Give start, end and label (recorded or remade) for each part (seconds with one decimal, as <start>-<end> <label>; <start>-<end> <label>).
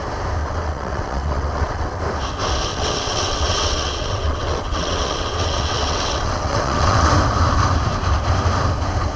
0.0-0.4 recorded; 0.4-2.0 remade; 2.0-2.7 recorded; 2.7-7.1 remade; 7.1-9.2 recorded